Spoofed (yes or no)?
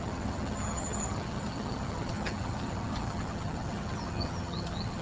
yes